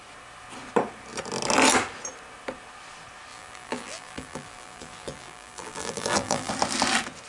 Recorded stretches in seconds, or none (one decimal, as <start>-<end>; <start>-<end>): 0.0-3.3; 6.5-7.3

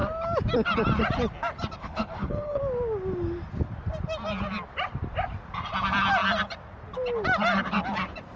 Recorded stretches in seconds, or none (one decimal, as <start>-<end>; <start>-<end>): 0.0-1.8; 2.6-8.4